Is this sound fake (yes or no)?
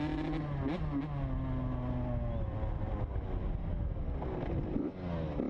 no